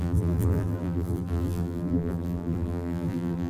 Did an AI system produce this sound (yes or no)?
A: yes